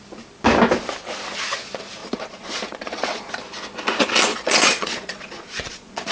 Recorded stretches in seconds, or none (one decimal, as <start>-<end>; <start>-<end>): 0.0-2.0; 3.3-4.3